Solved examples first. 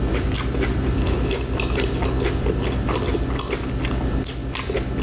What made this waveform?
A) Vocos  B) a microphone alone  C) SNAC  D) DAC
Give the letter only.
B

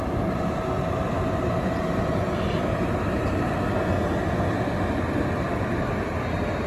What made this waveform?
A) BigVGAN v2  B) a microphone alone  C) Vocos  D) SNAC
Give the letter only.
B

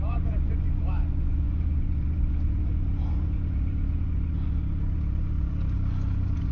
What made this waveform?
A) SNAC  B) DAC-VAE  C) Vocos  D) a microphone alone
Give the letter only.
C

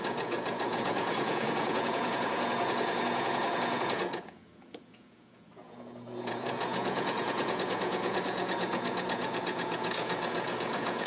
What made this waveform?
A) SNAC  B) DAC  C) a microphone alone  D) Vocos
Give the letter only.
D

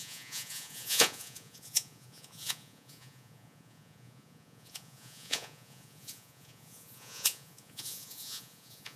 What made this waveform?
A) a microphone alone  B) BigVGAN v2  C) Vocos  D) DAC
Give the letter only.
C